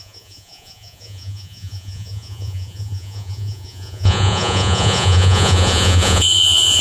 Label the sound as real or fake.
fake